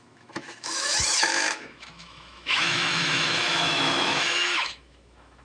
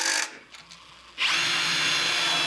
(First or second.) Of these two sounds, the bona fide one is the second